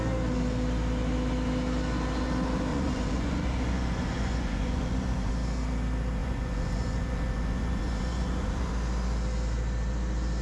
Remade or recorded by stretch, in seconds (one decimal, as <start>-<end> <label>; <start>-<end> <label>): 0.0-2.7 recorded; 2.7-5.3 remade; 5.3-6.2 recorded; 6.2-8.7 remade; 8.7-10.4 recorded